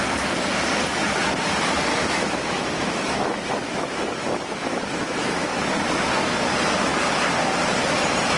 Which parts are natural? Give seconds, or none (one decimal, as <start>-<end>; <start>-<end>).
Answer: 0.0-1.9; 5.6-8.4